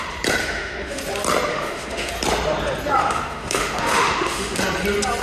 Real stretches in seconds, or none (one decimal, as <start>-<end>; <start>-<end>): 0.0-0.4; 1.0-1.5; 2.1-3.0; 4.6-5.2